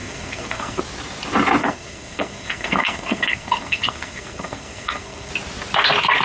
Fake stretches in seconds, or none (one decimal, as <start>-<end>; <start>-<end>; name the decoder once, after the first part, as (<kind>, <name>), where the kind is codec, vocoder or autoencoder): 0.0-0.8 (codec, SNAC); 1.6-5.3